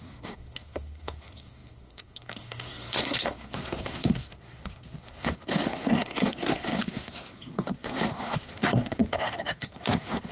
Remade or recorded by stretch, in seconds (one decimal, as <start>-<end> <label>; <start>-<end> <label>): 0.0-10.3 remade